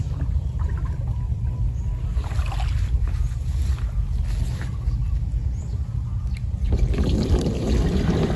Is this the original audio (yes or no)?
yes